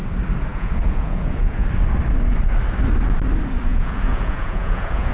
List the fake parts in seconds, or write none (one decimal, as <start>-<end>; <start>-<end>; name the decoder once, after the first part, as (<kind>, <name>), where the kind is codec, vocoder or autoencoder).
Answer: 0.5-1.7 (vocoder, Vocos); 3.7-5.1